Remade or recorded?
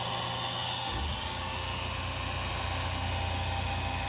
recorded